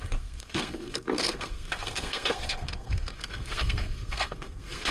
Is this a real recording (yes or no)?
no